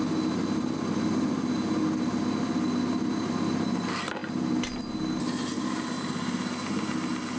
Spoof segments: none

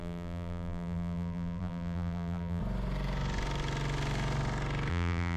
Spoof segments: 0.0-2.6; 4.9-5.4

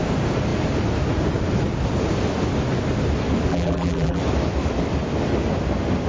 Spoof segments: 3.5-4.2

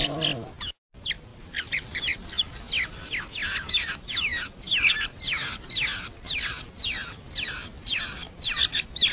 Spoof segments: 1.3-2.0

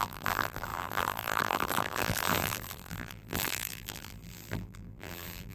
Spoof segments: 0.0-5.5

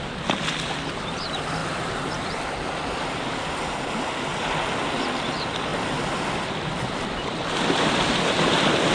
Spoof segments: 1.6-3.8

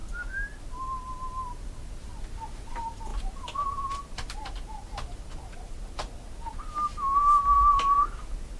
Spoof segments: 2.0-8.6

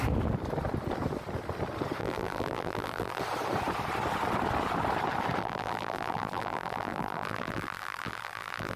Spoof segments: 2.0-3.2; 5.4-8.8